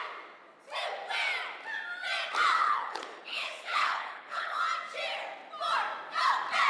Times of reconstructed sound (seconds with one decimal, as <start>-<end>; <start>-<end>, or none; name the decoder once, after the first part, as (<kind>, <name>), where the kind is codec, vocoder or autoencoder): 2.6-4.6 (codec, HILCodec)